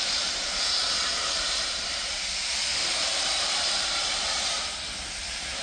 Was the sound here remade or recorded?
remade